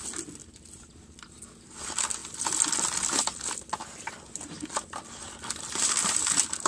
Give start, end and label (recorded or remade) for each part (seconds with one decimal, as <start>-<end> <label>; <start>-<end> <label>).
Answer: 0.0-6.7 recorded